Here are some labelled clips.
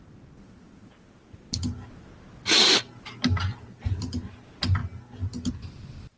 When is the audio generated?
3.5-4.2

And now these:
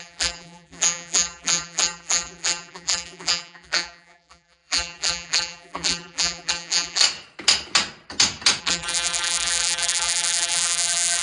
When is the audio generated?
0.0-7.0; 8.6-11.2

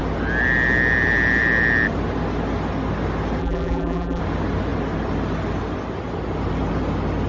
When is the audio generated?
3.4-4.2

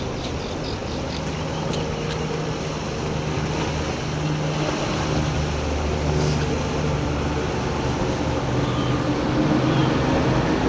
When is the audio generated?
none

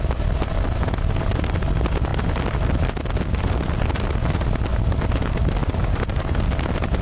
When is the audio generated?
5.6-6.2

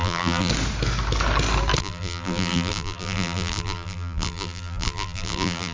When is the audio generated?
0.0-0.5; 1.8-5.7

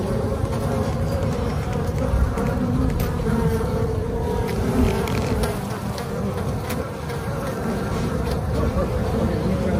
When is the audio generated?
1.2-3.8; 7.9-9.3